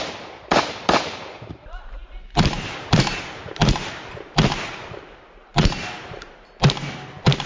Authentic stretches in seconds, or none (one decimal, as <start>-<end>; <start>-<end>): 0.0-0.5; 3.5-5.5; 6.3-7.5